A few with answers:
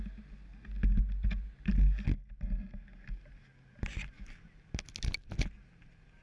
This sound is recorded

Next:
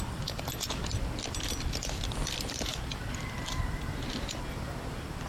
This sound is remade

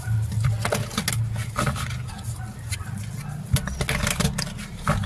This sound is recorded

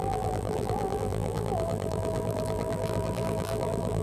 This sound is remade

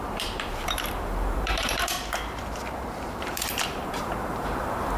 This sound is remade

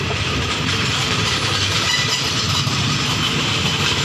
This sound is remade